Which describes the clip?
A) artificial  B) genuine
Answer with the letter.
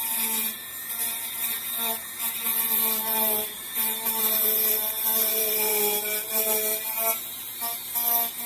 A